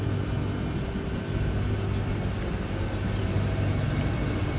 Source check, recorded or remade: recorded